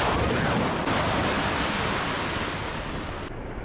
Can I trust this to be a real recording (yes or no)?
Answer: yes